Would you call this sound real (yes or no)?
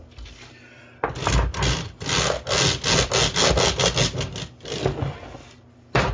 yes